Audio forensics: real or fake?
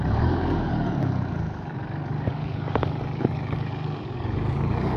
fake